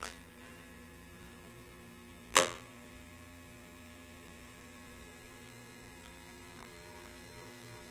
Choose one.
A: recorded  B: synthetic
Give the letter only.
B